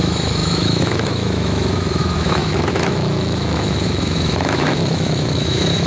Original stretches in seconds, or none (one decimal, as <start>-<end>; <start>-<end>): none